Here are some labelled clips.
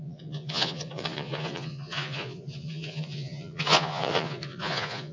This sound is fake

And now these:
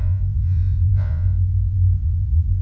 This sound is fake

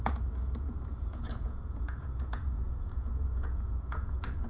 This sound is fake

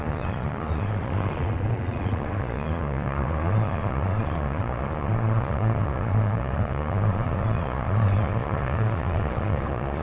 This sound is fake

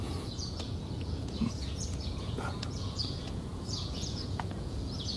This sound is fake